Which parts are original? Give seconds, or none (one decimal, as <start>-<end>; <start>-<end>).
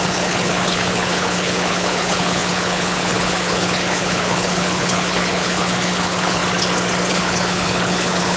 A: 6.4-7.1